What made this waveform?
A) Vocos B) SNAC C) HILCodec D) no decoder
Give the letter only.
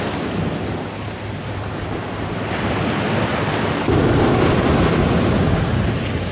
D